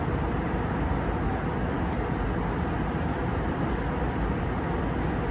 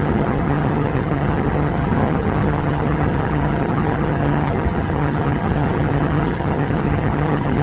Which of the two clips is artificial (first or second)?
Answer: second